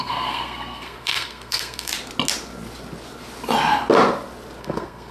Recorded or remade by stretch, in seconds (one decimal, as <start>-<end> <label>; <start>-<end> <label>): 0.0-1.9 remade; 1.9-4.6 recorded; 4.6-5.1 remade